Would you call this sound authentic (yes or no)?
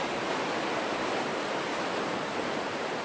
yes